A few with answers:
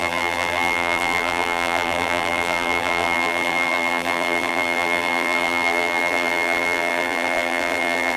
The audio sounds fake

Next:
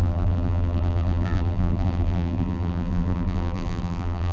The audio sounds fake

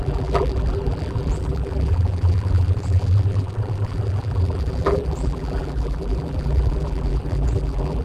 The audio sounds fake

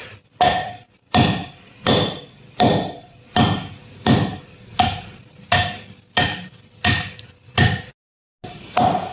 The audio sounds real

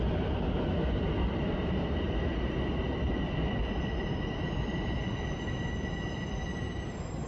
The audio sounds real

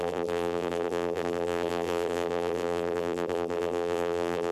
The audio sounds fake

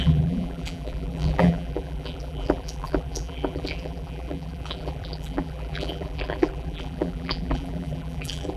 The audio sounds fake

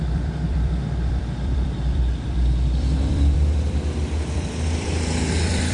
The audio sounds fake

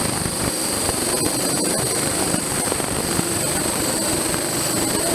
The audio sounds fake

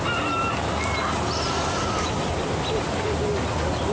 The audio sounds real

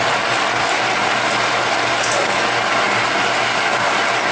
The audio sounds real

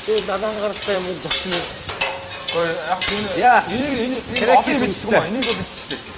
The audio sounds fake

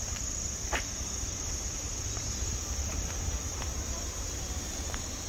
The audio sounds fake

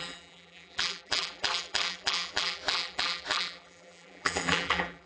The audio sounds fake